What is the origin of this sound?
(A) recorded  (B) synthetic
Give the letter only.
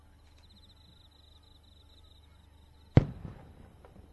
A